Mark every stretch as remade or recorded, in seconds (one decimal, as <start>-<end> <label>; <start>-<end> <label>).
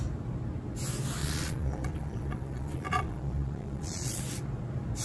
0.0-1.2 recorded; 1.2-4.2 remade; 4.2-5.0 recorded